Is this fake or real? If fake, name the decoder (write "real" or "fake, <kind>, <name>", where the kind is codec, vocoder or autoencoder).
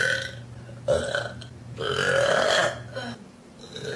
real